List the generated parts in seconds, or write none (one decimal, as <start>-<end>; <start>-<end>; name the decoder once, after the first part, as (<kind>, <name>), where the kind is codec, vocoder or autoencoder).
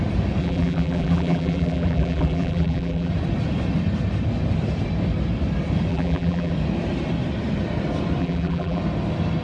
0.4-3.1 (vocoder, BigVGAN v2); 5.9-6.5; 8.2-8.8